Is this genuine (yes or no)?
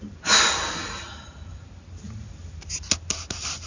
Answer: yes